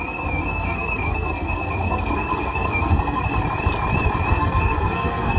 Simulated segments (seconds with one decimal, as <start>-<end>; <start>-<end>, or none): 0.0-3.3; 4.3-5.4

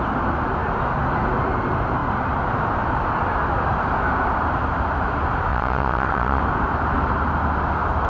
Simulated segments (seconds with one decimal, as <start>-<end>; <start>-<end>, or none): 5.5-6.4

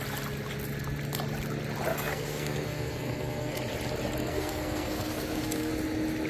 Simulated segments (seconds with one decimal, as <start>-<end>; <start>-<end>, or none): 1.9-3.6; 4.2-5.7

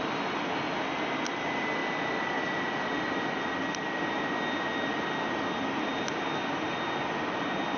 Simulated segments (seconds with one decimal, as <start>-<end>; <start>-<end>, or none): none